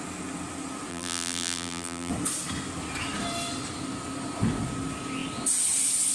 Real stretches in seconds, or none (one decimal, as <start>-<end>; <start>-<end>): 0.0-0.9; 2.1-6.1